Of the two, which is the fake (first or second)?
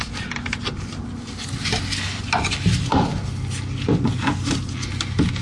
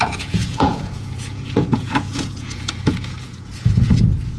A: second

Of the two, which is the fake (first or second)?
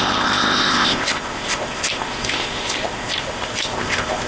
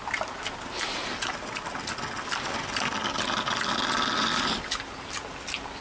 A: first